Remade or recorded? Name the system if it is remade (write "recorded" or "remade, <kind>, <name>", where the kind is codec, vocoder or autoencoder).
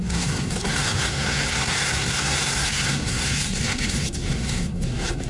remade, codec, SNAC